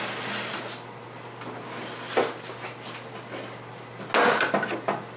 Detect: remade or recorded recorded